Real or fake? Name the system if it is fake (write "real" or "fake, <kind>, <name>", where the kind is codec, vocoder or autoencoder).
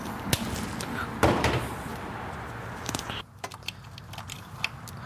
real